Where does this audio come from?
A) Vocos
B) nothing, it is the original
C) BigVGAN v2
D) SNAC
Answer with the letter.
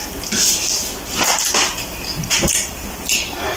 B